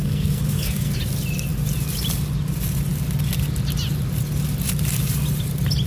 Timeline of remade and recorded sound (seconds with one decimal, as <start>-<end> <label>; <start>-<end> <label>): 0.0-0.9 remade; 0.9-5.9 recorded